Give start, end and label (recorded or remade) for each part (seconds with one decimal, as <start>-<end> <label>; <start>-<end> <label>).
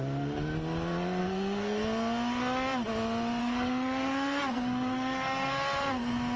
0.0-1.2 recorded; 1.2-1.8 remade; 1.8-3.4 recorded; 3.4-6.4 remade